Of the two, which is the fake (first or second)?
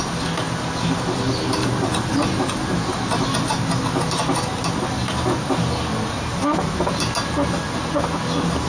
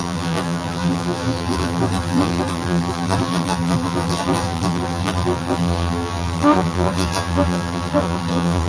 second